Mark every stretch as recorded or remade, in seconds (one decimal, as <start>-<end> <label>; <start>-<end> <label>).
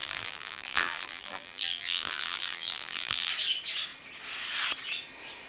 0.0-3.3 remade; 3.3-5.5 recorded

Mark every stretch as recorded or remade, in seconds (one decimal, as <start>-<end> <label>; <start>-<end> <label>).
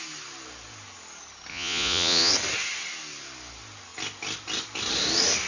0.0-1.5 recorded; 1.5-2.3 remade; 2.3-5.5 recorded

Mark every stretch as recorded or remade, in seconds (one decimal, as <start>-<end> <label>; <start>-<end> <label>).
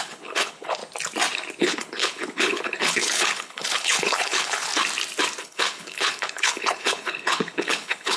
0.0-0.8 remade; 0.8-1.6 recorded; 1.6-4.7 remade; 4.7-5.4 recorded; 5.4-8.2 remade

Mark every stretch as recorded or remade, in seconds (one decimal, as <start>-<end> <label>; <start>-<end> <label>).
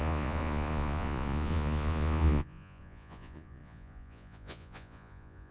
0.0-5.5 remade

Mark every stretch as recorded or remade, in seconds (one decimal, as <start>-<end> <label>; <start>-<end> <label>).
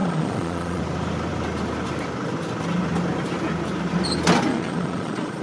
0.0-0.8 remade; 0.8-4.5 recorded; 4.5-5.4 remade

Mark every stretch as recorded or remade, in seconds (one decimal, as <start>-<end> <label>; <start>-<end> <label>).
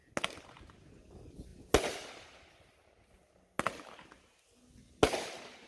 0.0-5.7 recorded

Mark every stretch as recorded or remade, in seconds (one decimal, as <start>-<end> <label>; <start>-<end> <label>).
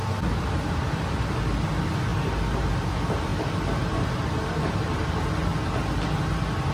0.0-6.7 recorded